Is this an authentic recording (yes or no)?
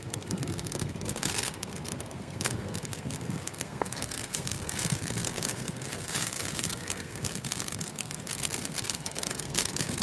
no